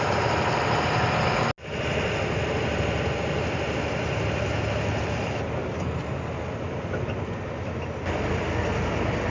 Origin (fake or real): real